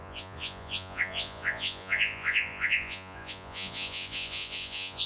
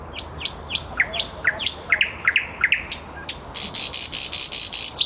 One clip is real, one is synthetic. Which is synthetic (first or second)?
first